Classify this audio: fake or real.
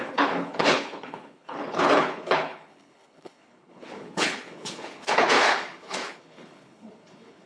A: fake